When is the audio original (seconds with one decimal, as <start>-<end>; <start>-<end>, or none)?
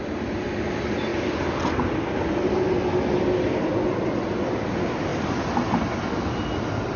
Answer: 0.0-7.0